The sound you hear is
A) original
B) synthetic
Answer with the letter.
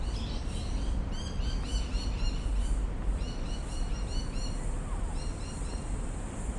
A